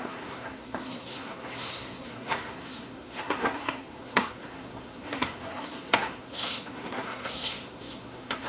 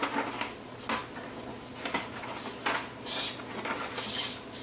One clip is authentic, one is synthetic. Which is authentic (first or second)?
second